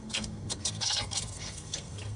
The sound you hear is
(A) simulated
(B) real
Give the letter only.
A